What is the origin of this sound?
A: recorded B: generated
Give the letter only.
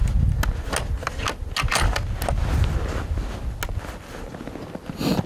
A